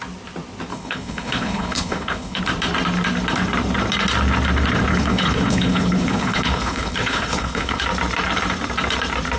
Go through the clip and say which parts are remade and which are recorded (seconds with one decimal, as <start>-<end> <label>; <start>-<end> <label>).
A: 0.0-0.7 recorded; 0.7-2.4 remade; 2.4-4.9 recorded; 4.9-7.8 remade; 7.8-9.4 recorded